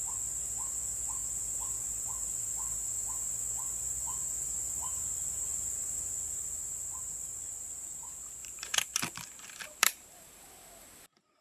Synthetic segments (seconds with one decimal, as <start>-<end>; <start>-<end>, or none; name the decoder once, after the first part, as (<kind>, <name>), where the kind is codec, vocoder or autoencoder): 8.4-10.4 (vocoder, BigVGAN v2)